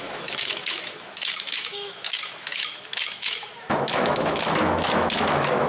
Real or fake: fake